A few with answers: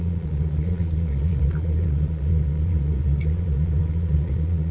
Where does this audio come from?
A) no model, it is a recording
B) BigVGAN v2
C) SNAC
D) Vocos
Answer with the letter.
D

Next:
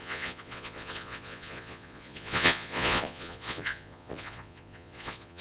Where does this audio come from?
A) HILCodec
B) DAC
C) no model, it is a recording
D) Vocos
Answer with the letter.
D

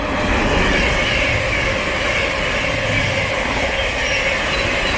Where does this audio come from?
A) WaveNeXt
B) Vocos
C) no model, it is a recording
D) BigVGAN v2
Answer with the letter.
C